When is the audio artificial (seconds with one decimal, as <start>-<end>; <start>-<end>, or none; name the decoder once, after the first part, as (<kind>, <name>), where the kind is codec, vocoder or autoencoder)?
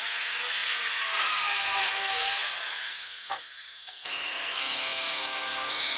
0.0-6.0 (codec, SNAC)